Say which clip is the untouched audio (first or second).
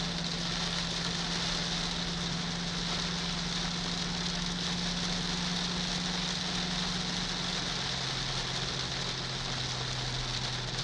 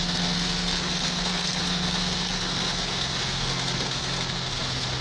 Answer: first